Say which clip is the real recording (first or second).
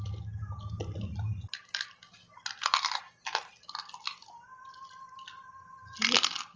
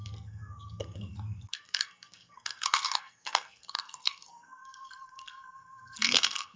first